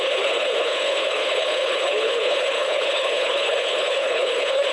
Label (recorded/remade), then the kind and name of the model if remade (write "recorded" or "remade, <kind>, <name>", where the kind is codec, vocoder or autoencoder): remade, codec, HILCodec